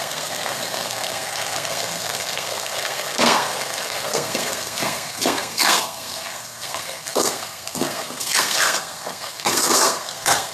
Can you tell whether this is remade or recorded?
remade